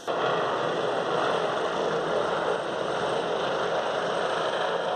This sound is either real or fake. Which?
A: real